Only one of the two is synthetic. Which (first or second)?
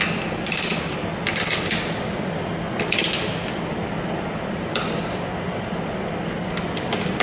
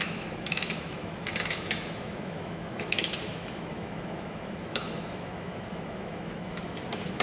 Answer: second